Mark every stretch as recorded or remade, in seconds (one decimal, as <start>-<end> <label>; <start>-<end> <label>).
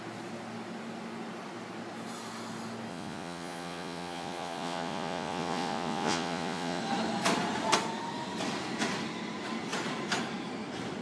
0.0-2.9 recorded; 2.9-6.8 remade; 6.8-11.0 recorded